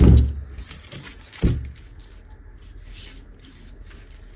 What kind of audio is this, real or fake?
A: real